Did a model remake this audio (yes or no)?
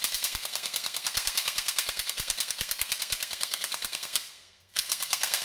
yes